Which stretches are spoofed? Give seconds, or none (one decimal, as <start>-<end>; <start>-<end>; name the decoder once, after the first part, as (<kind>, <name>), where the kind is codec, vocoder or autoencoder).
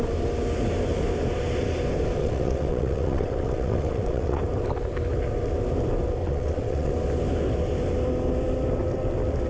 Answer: 2.2-4.4 (vocoder, WaveNeXt); 6.2-6.9